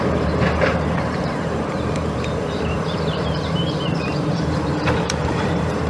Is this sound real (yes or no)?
no